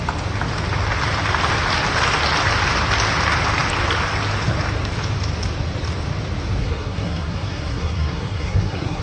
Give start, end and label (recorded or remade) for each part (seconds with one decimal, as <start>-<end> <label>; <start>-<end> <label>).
0.0-6.6 recorded; 6.6-9.0 remade